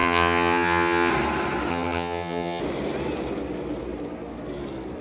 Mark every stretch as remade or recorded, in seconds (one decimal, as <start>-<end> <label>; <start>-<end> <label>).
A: 0.0-1.1 remade; 1.1-1.7 recorded; 1.7-2.6 remade; 2.6-5.0 recorded